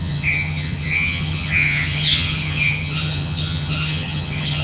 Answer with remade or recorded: remade